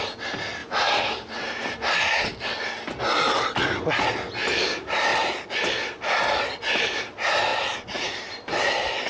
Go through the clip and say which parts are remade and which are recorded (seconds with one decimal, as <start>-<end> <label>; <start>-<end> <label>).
0.0-0.6 recorded; 0.6-2.0 remade; 2.0-9.1 recorded